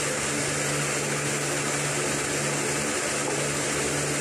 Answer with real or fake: real